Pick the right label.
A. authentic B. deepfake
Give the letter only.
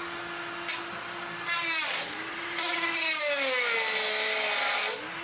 A